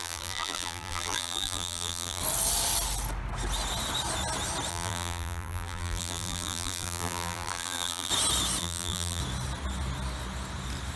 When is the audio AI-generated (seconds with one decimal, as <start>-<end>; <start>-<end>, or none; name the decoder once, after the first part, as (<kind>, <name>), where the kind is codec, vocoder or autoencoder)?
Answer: 0.0-2.2 (vocoder, BigVGAN v2); 4.7-8.1; 8.6-9.2